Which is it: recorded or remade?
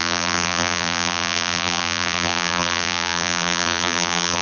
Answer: remade